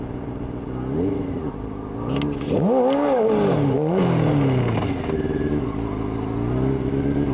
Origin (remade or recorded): recorded